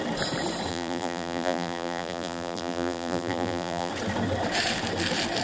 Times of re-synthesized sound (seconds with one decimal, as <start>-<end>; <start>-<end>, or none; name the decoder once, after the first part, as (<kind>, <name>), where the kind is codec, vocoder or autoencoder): 0.7-3.9 (vocoder, BigVGAN v2)